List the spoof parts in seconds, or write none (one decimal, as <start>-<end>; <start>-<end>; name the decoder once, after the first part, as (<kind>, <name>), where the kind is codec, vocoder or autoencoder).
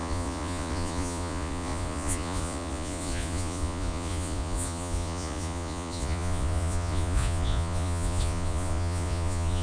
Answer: 0.0-9.6 (vocoder, Vocos)